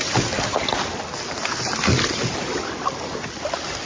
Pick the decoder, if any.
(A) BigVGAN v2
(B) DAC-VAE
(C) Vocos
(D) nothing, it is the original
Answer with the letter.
D